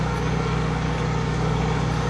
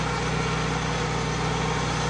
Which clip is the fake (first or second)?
first